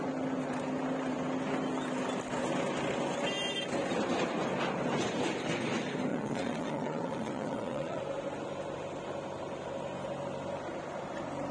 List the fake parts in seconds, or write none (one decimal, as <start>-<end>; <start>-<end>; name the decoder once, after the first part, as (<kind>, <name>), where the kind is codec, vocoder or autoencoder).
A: 6.1-8.0 (vocoder, Vocos)